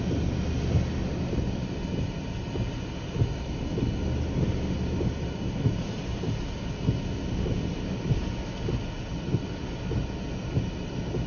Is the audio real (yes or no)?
yes